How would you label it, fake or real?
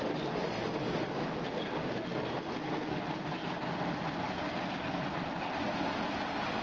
real